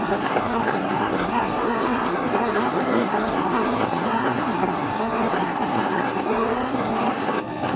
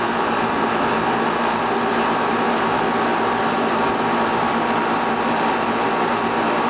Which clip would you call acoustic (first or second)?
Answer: second